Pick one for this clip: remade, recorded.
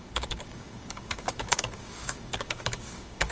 remade